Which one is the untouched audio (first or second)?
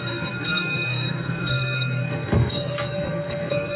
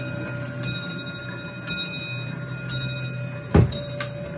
second